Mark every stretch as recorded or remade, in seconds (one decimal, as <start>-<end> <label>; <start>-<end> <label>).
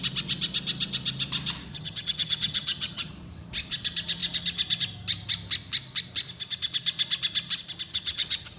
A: 0.0-1.7 recorded; 1.7-3.1 remade; 3.1-7.9 recorded; 7.9-8.6 remade